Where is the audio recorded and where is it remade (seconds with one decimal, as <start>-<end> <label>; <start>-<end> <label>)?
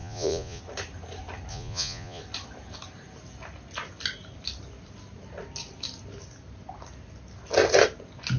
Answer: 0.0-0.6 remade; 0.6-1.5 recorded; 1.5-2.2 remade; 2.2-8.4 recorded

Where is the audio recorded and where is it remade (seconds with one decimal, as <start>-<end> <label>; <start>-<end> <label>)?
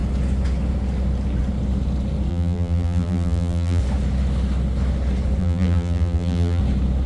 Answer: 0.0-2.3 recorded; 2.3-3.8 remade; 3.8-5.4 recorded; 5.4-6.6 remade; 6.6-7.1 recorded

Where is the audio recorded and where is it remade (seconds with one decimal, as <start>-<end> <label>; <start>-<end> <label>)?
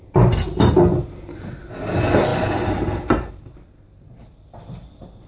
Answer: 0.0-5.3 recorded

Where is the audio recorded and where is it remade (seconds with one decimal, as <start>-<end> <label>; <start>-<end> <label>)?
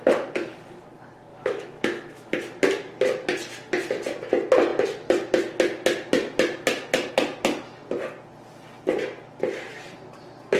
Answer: 0.0-1.3 recorded; 1.3-2.3 remade; 2.3-10.6 recorded